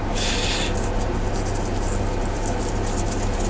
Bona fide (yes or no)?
yes